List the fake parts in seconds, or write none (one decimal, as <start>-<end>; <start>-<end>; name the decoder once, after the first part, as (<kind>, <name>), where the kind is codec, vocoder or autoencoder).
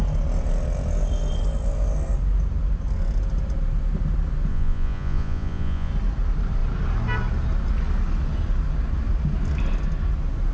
4.5-5.9 (vocoder, Vocos)